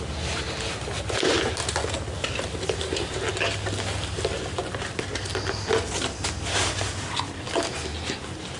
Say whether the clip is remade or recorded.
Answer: recorded